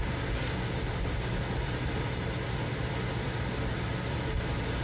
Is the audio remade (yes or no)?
no